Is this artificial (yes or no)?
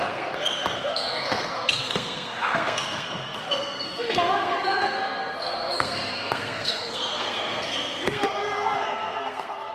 yes